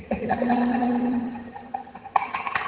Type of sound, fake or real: fake